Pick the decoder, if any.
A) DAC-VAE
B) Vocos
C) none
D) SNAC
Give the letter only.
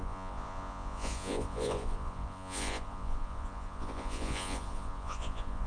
B